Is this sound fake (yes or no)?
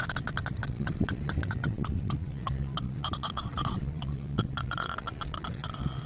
yes